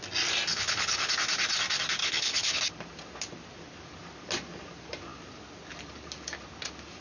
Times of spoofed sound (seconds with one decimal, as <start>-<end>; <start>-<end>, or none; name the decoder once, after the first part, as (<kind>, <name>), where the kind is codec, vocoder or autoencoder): 0.5-1.1 (codec, HILCodec); 2.0-2.6